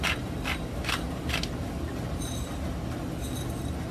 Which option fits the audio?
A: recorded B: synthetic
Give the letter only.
A